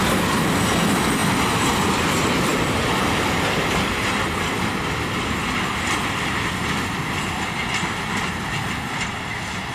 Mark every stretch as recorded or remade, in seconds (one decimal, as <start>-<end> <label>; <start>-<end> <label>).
0.0-9.7 recorded